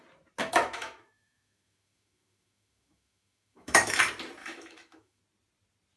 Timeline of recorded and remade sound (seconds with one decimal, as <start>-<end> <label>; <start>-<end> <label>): 0.0-0.4 recorded; 0.4-4.0 remade; 4.0-4.4 recorded; 4.4-5.2 remade; 5.2-6.0 recorded